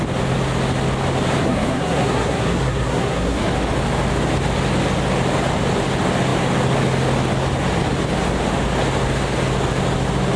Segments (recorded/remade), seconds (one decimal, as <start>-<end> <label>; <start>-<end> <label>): 0.0-1.4 recorded; 1.4-3.5 remade; 3.5-10.4 recorded